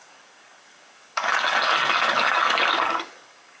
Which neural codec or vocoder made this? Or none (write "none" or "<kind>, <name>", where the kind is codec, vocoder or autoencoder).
codec, DAC